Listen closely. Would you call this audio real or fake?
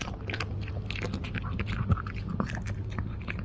real